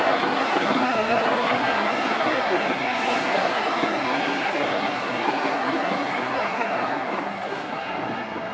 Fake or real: fake